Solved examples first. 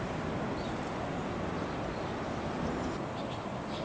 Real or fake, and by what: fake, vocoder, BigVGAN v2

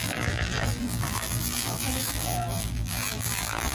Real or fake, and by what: fake, vocoder, BigVGAN v2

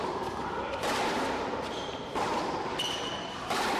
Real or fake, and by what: fake, vocoder, BigVGAN v2